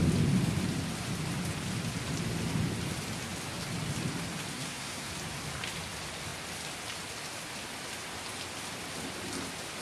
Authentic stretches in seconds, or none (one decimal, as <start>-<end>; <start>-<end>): 0.0-4.5; 5.1-9.8